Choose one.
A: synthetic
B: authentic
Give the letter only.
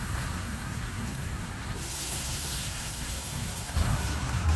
A